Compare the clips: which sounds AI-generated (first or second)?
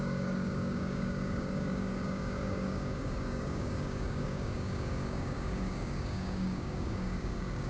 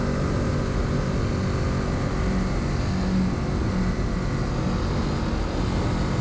first